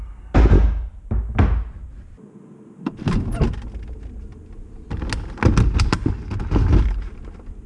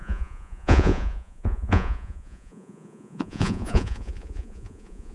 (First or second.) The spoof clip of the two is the second